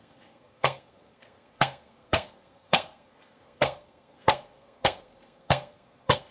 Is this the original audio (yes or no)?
no